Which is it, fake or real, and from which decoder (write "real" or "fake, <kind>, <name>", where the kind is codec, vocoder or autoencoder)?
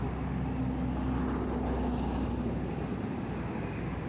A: real